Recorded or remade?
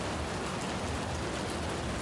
recorded